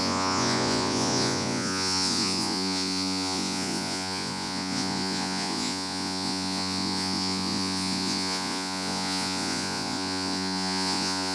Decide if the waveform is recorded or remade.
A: remade